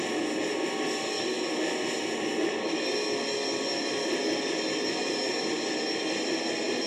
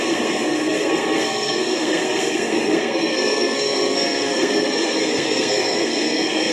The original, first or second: first